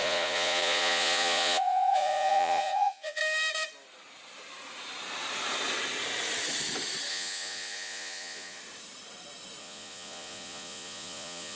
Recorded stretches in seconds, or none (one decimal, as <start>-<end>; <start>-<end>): 3.2-7.1; 8.6-9.6